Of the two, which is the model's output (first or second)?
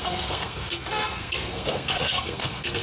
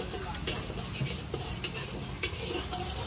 first